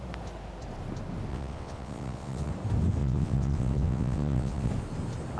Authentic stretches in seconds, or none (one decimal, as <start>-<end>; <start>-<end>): 0.0-1.3; 2.5-3.0; 4.7-5.4

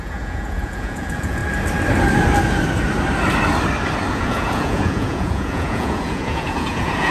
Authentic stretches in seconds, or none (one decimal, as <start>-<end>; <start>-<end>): 1.4-4.1